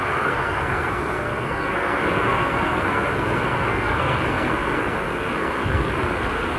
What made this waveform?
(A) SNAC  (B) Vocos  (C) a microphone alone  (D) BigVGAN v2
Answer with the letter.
A